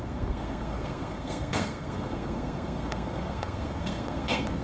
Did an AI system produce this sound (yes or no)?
yes